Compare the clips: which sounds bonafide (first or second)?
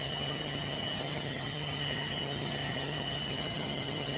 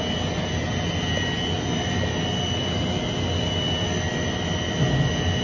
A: second